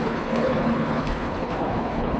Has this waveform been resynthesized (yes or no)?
yes